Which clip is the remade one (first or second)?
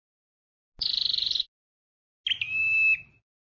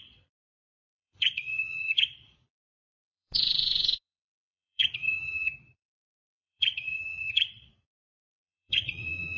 second